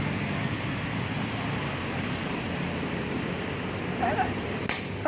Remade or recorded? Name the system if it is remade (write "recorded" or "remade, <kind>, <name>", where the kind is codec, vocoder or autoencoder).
recorded